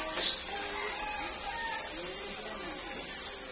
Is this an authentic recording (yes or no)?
yes